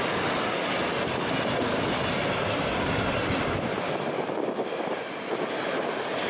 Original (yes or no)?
yes